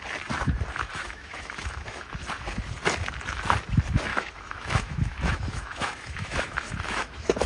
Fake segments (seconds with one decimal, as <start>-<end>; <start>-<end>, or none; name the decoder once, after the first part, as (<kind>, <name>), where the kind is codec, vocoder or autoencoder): 0.9-2.1 (autoencoder, DAC-VAE); 4.1-7.5